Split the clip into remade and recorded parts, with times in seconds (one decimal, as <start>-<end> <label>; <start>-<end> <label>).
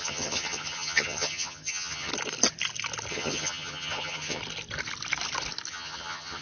0.0-2.1 remade; 2.1-3.1 recorded; 3.1-4.4 remade; 4.4-5.7 recorded; 5.7-6.4 remade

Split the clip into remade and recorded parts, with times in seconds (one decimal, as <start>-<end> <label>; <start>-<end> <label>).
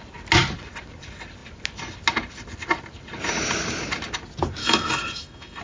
0.0-4.6 recorded; 4.6-5.6 remade